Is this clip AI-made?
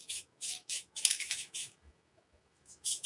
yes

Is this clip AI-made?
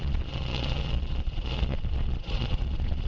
yes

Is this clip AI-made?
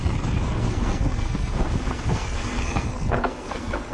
yes